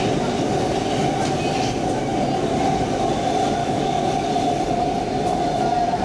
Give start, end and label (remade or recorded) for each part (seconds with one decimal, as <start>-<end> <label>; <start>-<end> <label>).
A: 0.0-3.6 recorded; 3.6-4.3 remade; 4.3-6.0 recorded